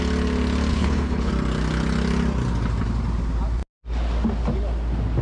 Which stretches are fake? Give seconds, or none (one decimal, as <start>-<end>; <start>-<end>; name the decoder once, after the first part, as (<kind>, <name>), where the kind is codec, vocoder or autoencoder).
0.7-1.3 (codec, HILCodec)